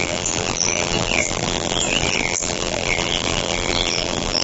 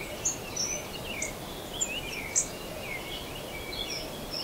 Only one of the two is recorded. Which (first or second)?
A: second